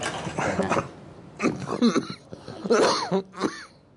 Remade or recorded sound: recorded